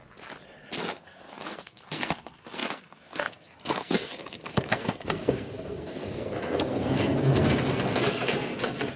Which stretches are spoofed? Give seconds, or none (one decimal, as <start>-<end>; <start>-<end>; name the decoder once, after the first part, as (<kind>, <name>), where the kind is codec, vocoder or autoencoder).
0.8-9.0 (codec, SNAC)